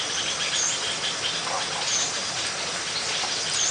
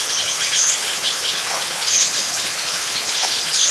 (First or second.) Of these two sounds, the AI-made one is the second